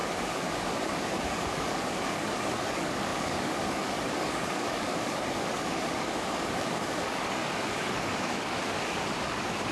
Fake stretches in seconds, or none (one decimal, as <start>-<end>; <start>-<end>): 0.0-9.7